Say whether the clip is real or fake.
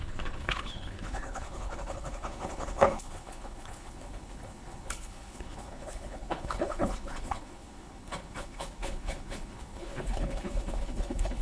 fake